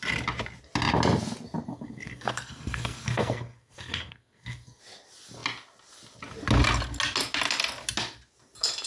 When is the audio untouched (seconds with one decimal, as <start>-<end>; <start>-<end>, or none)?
0.0-1.7; 4.8-8.9